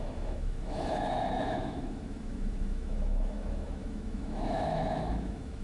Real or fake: fake